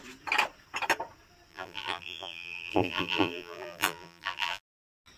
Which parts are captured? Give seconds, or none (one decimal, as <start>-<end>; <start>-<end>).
0.0-1.5; 4.6-5.2